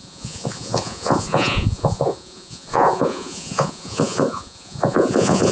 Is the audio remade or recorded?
remade